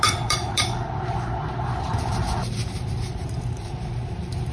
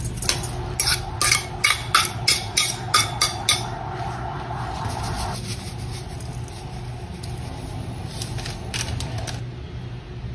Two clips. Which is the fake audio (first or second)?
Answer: first